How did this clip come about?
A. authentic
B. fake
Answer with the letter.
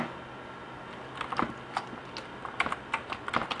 A